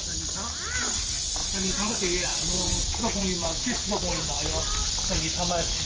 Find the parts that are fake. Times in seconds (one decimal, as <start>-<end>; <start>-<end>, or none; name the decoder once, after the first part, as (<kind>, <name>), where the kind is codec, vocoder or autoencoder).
1.4-1.9 (vocoder, Vocos); 2.3-4.3